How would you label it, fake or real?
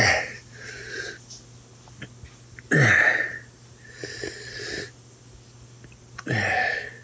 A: real